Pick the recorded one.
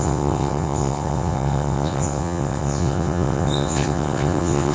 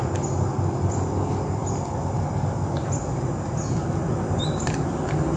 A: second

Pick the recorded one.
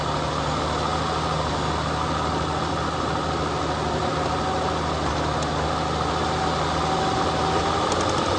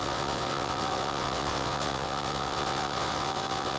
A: first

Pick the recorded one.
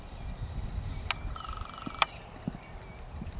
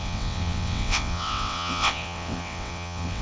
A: first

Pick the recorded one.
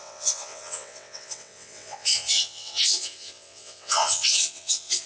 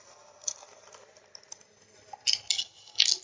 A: second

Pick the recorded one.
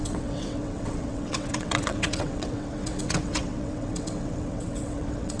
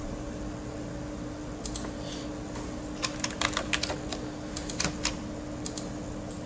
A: second